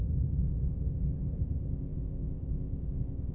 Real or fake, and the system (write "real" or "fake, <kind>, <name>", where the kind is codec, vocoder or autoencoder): fake, codec, ZipCodec